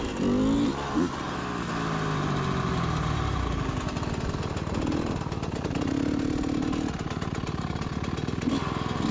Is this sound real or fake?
real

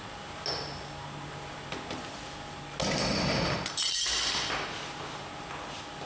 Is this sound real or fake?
real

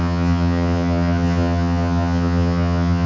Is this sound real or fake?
fake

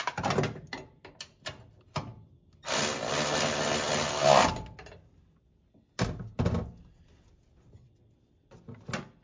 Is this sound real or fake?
real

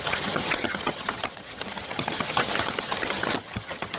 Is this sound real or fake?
fake